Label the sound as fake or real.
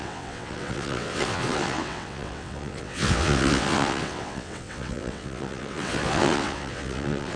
fake